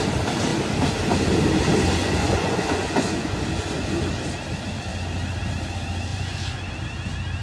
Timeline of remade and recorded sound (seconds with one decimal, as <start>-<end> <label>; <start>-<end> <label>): 0.0-2.0 recorded; 2.0-4.0 remade; 4.0-6.1 recorded; 6.1-6.7 remade; 6.7-7.4 recorded